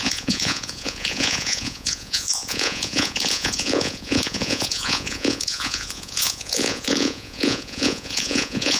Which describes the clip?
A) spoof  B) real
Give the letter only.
A